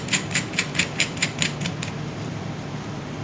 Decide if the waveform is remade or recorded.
remade